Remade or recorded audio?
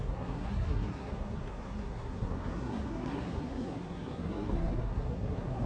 remade